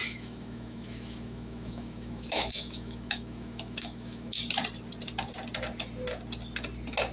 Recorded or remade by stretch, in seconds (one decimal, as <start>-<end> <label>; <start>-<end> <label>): 0.0-4.3 remade; 4.3-7.1 recorded